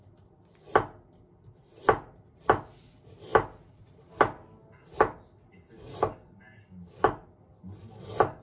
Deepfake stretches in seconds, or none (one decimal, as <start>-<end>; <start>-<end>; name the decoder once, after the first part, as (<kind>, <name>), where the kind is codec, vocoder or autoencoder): none